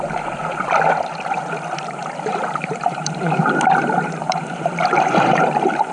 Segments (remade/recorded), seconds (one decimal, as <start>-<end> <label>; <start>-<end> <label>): 0.0-2.3 recorded; 2.3-5.9 remade